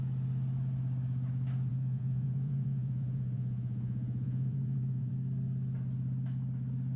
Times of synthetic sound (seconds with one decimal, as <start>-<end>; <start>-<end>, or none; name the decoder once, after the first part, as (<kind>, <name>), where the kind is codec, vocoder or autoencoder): 1.7-5.1 (vocoder, Vocos)